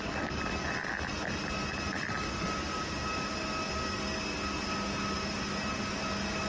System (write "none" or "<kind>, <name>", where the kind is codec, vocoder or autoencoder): none